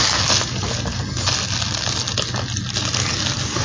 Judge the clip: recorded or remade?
recorded